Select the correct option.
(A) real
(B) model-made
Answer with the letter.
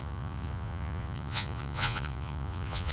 B